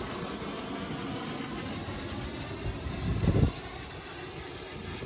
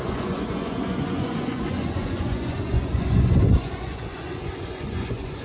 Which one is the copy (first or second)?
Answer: second